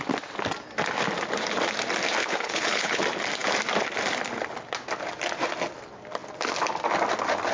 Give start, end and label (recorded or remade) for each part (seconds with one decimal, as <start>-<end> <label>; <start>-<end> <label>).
0.0-2.2 recorded; 2.2-3.0 remade; 3.0-7.5 recorded